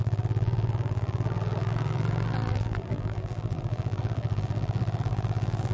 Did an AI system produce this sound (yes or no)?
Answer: yes